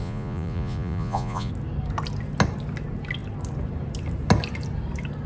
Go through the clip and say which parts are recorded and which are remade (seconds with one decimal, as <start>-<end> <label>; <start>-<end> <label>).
0.0-1.5 remade; 1.5-5.3 recorded